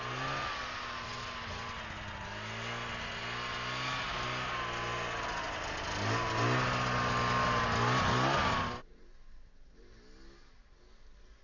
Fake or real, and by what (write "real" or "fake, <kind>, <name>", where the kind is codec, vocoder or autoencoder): real